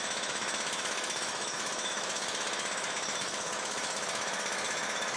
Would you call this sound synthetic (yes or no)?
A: yes